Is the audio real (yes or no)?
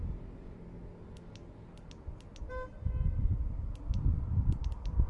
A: yes